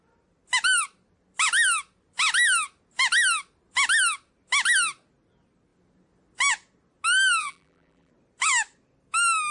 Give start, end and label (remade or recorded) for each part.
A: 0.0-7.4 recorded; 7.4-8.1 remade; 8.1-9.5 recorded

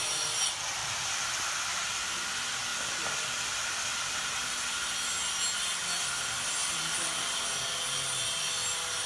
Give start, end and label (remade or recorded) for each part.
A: 0.0-0.8 recorded; 0.8-1.5 remade; 1.5-2.7 recorded; 2.7-4.8 remade; 4.8-6.6 recorded; 6.6-7.4 remade; 7.4-9.1 recorded

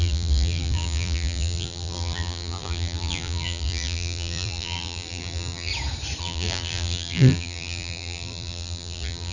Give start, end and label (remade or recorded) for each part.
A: 0.0-5.7 remade; 5.7-6.2 recorded; 6.2-9.3 remade

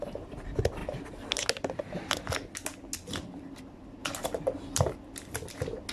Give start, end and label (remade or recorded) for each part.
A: 0.0-4.0 recorded; 4.0-4.8 remade; 4.8-5.9 recorded